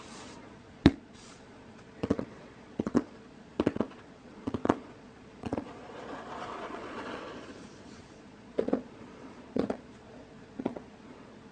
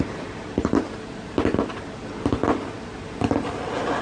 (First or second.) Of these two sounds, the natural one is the second